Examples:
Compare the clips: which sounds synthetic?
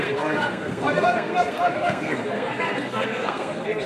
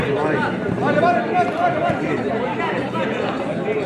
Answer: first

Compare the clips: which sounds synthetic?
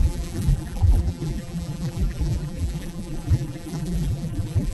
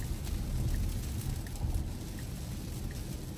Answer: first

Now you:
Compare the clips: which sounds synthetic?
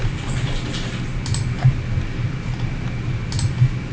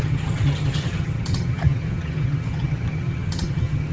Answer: second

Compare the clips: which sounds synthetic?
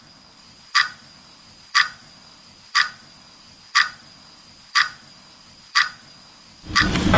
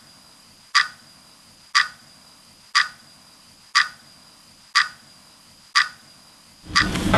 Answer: first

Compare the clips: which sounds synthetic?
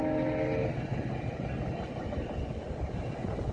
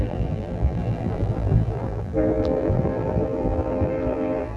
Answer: second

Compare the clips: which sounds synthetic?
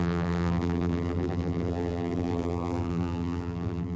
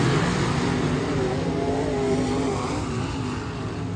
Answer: first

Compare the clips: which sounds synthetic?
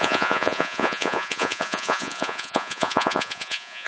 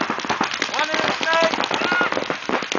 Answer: first